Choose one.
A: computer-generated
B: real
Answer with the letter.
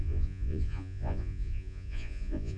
A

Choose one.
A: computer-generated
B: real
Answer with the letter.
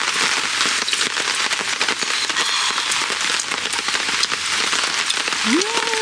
B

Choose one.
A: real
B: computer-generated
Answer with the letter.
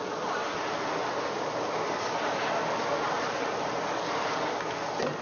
A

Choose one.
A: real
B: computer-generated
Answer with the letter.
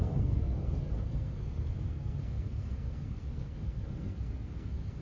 B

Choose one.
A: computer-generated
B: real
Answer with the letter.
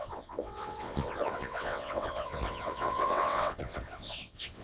A